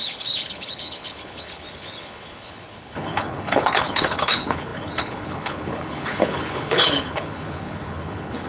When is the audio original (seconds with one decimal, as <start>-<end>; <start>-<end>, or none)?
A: none